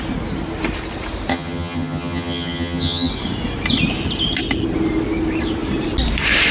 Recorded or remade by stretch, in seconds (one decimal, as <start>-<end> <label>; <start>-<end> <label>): 0.0-1.3 recorded; 1.3-3.1 remade; 3.1-6.5 recorded